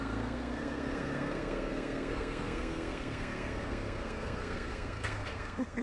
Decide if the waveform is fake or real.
fake